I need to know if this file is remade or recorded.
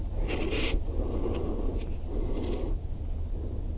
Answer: recorded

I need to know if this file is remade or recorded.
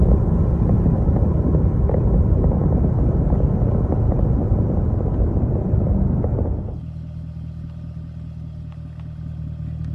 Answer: recorded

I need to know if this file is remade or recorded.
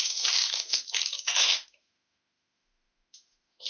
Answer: remade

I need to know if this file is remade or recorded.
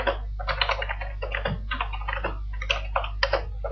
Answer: recorded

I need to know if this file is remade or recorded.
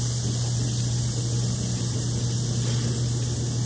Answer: recorded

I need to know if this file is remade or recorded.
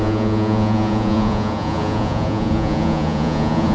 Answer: remade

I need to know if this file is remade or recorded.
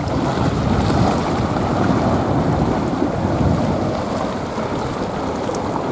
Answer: recorded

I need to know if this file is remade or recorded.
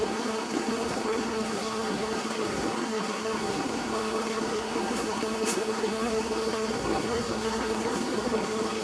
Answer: remade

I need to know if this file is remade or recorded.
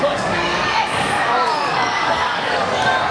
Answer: remade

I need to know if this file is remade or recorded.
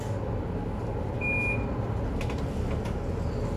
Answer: recorded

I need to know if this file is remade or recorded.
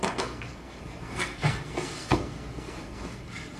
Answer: remade